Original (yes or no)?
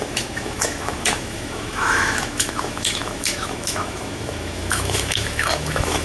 no